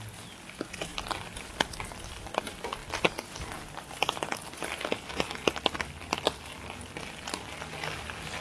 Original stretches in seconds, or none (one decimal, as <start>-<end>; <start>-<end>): 0.0-8.4